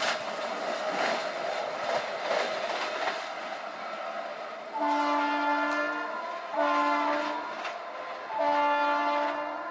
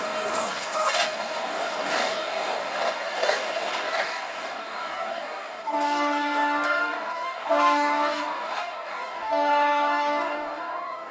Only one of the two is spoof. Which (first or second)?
second